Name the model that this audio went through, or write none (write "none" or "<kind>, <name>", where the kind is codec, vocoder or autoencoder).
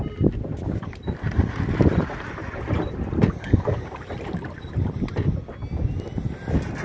vocoder, BigVGAN v2